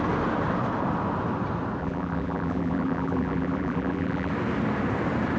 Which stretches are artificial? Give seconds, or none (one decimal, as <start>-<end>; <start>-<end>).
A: 1.8-4.3